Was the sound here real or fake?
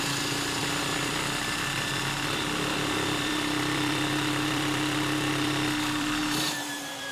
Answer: fake